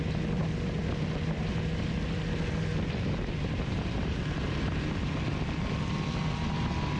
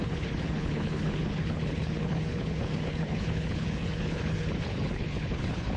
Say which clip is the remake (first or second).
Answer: second